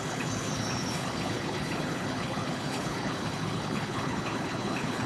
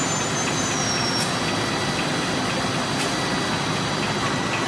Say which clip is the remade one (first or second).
first